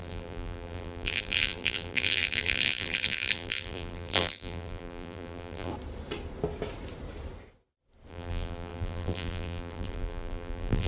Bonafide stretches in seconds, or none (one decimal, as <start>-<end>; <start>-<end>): 5.7-8.1